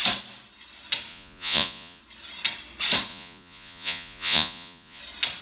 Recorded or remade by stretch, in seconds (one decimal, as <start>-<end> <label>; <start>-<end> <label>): 0.0-1.1 recorded; 1.1-2.0 remade; 2.0-3.1 recorded; 3.1-5.0 remade; 5.0-5.4 recorded

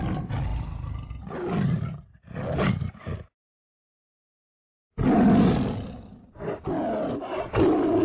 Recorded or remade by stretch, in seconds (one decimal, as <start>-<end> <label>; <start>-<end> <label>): 0.0-8.0 recorded

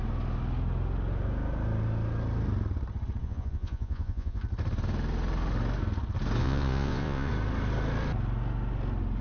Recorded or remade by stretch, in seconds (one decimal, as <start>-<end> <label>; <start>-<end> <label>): 0.0-3.2 recorded; 3.2-4.4 remade; 4.4-6.4 recorded; 6.4-7.3 remade; 7.3-9.2 recorded

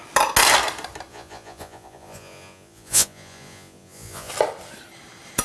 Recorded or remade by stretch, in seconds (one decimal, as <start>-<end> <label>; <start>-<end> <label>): 0.0-1.1 recorded; 1.1-4.3 remade; 4.3-5.4 recorded

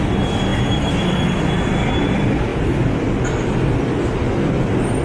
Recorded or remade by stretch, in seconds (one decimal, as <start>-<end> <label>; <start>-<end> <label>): 0.0-5.0 recorded

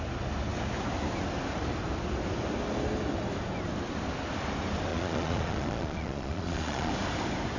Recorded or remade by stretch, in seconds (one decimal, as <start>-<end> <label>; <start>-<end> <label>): 0.0-4.9 recorded; 4.9-6.9 remade; 6.9-7.6 recorded

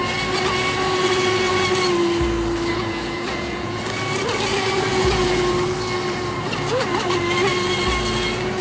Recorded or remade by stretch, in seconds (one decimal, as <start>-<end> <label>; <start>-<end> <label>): 0.0-2.7 recorded; 2.7-3.8 remade; 3.8-4.9 recorded; 4.9-5.4 remade; 5.4-8.6 recorded

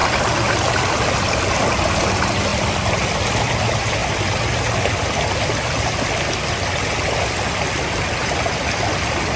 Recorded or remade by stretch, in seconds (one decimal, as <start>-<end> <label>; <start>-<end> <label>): 0.0-9.4 recorded